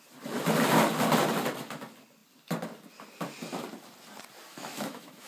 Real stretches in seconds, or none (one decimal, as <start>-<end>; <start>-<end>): 0.0-4.5